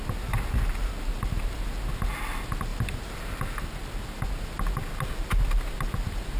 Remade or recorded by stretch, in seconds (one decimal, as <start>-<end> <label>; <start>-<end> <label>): 0.0-6.4 recorded